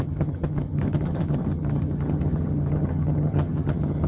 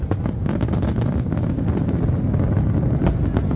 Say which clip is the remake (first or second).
first